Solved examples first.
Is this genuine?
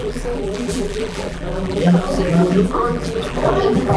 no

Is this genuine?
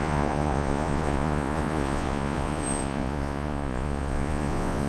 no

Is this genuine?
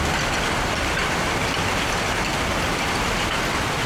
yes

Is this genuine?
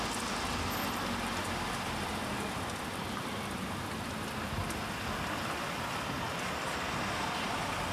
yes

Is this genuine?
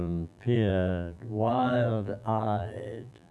no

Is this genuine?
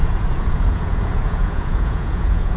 no